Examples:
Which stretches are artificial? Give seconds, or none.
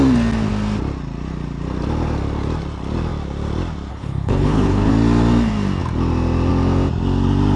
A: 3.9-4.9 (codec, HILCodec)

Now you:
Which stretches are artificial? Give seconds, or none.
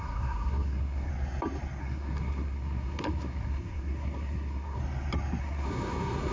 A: 0.0-1.1 (codec, SNAC); 1.8-4.8; 5.4-6.3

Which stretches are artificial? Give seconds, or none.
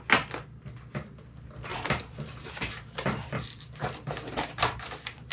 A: 1.7-5.3 (vocoder, BigVGAN v2)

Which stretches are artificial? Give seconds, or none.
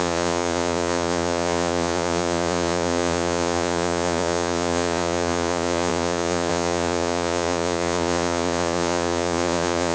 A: 0.0-9.9 (vocoder, Vocos)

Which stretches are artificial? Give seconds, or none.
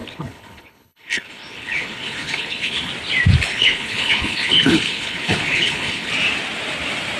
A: 0.0-2.9 (codec, HILCodec); 3.5-6.1